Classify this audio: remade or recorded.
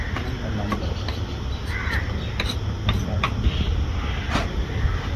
recorded